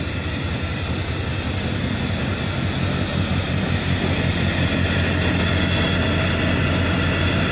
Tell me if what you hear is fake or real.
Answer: real